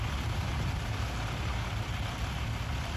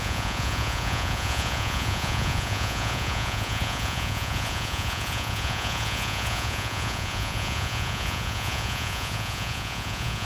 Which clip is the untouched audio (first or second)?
first